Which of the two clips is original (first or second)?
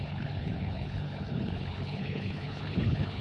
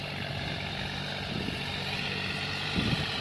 second